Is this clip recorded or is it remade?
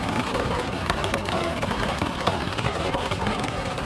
remade